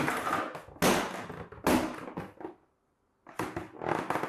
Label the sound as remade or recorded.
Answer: recorded